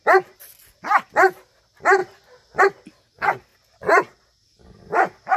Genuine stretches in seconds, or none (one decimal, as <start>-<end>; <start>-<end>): 0.0-2.0; 2.6-3.5; 4.8-5.4